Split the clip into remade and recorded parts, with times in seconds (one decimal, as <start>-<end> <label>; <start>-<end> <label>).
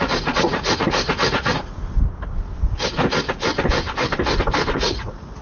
0.0-1.5 remade; 1.5-4.7 recorded; 4.7-5.4 remade